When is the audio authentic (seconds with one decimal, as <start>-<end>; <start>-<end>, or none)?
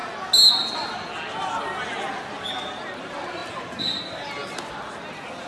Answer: 0.0-5.5